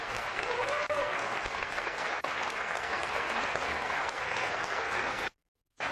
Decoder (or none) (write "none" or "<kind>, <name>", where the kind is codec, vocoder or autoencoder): codec, SNAC